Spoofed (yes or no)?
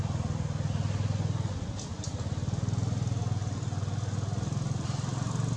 no